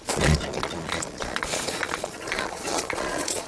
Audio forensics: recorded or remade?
remade